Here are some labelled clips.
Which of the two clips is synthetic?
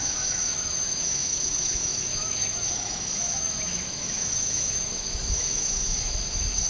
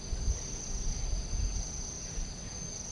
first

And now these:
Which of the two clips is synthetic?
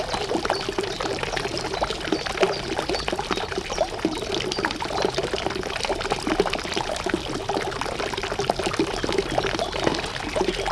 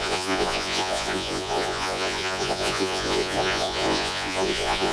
second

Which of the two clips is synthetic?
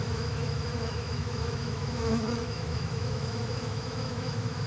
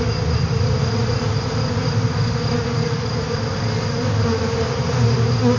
first